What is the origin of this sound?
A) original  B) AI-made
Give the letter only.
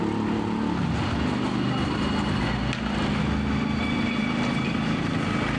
A